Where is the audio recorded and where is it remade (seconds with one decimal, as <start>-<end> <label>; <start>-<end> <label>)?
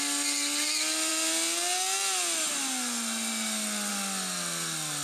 0.0-5.0 recorded